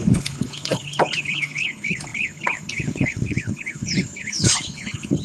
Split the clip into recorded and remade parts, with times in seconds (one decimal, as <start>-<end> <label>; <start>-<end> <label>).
0.0-5.2 remade